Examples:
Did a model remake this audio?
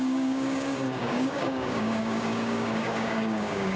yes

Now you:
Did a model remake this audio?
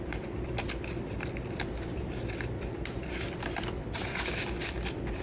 yes